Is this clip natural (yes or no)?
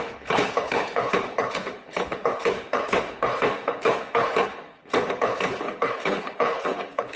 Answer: no